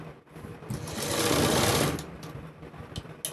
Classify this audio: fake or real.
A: real